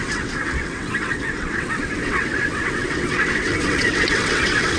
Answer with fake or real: fake